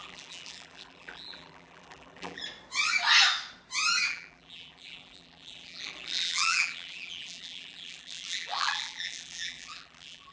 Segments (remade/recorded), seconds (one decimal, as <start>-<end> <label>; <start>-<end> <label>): 0.0-2.4 remade; 2.4-4.1 recorded; 4.1-10.3 remade